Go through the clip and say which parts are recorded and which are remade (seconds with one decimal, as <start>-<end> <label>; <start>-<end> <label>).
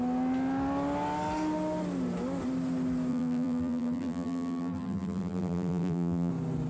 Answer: 0.0-3.1 recorded; 3.1-6.3 remade; 6.3-6.7 recorded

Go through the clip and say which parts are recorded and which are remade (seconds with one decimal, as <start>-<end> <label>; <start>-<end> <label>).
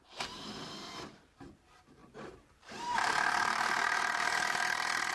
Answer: 0.0-5.1 remade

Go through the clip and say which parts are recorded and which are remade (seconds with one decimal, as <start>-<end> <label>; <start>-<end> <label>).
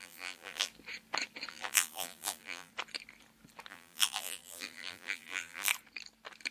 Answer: 0.0-0.7 remade; 0.7-1.5 recorded; 1.5-2.7 remade; 2.7-3.7 recorded; 3.7-5.7 remade; 5.7-6.5 recorded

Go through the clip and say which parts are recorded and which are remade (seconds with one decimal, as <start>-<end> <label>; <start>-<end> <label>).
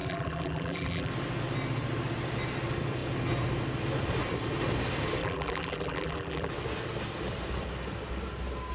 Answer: 0.0-1.1 remade; 1.1-5.2 recorded; 5.2-6.5 remade; 6.5-8.7 recorded